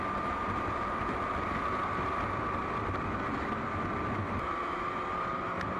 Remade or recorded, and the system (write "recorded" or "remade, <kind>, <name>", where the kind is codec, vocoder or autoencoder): recorded